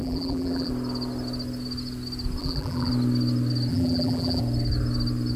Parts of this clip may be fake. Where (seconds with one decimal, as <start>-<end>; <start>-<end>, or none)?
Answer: 0.0-0.7; 2.4-2.9; 3.7-4.4